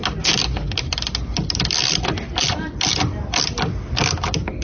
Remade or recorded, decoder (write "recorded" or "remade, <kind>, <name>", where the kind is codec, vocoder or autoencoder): recorded